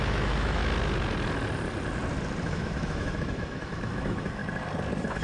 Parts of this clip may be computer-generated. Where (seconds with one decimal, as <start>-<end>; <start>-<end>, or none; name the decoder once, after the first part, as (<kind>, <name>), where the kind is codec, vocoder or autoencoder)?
0.0-0.6 (autoencoder, DAC-VAE); 2.4-4.4